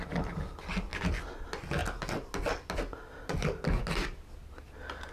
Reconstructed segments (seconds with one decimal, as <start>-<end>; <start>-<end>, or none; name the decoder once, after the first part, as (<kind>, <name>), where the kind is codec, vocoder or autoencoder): none

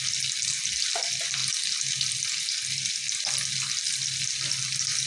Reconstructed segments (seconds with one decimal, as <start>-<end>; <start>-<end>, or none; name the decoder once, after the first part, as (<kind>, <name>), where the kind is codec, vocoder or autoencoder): none

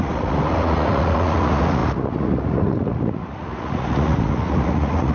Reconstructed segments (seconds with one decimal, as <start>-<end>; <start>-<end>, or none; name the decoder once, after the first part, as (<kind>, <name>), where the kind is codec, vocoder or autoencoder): 0.0-5.1 (vocoder, Vocos)

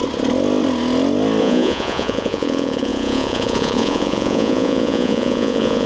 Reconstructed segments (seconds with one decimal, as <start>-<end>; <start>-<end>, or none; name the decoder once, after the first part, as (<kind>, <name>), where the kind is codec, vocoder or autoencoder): 1.4-5.9 (vocoder, Vocos)